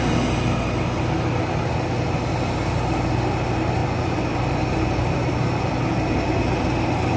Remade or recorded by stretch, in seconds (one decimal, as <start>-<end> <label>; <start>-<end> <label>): 0.0-7.2 recorded